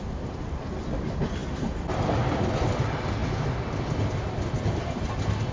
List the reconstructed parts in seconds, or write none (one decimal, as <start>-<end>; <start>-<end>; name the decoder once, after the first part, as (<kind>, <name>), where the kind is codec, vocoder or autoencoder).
none